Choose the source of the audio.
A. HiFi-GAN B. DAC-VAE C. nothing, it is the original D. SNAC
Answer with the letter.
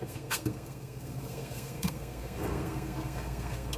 D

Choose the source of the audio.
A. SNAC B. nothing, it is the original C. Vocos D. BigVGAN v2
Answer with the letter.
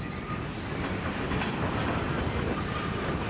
D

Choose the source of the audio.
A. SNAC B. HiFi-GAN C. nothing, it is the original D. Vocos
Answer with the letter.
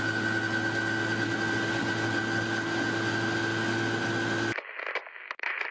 C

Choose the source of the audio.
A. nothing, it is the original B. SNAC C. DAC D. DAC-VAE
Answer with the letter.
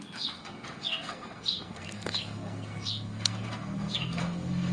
B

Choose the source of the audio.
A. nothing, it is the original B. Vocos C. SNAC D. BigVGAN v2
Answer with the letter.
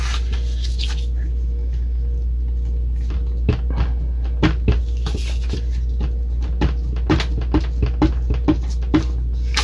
A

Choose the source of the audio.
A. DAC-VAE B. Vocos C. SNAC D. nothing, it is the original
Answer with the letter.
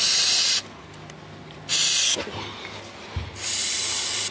D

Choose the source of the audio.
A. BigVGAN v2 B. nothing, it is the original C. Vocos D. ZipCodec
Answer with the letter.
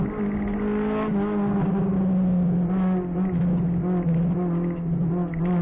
B